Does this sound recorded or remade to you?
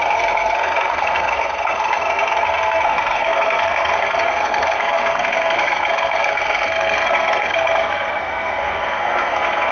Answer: remade